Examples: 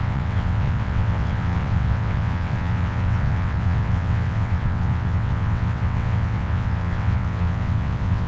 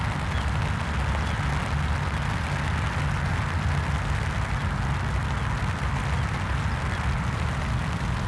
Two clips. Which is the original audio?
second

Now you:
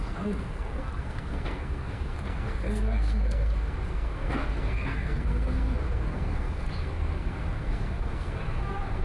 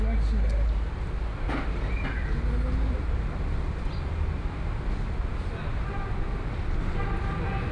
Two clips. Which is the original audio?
second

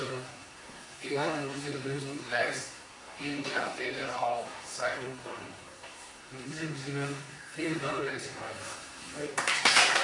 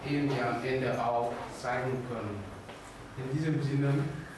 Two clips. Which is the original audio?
second